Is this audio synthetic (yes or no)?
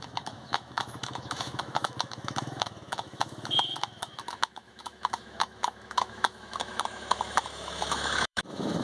yes